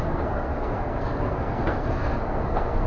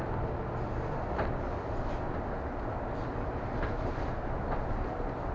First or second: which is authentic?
second